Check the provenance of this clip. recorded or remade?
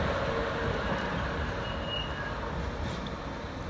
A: recorded